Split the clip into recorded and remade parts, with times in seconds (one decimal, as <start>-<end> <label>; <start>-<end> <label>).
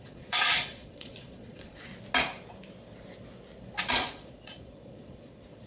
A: 0.0-1.9 remade; 1.9-3.9 recorded; 3.9-5.7 remade